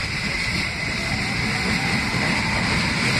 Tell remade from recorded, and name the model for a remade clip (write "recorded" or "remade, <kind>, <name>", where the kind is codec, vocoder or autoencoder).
remade, vocoder, BigVGAN v2